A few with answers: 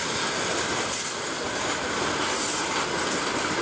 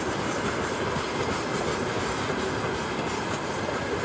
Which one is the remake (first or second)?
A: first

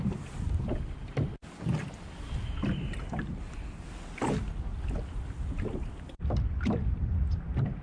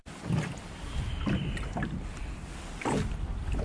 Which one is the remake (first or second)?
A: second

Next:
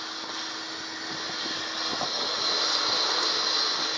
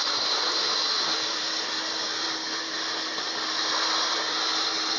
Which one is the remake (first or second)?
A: second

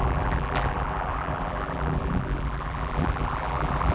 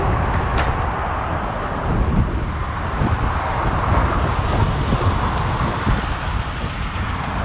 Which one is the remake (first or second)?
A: first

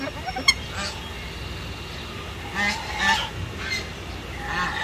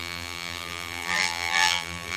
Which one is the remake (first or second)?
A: second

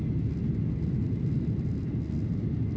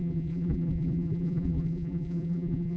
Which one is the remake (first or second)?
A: second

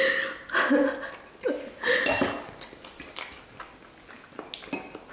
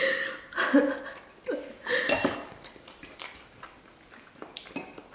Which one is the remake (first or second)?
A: second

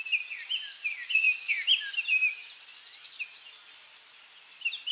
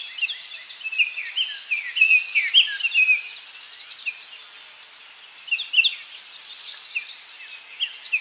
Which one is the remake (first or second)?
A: first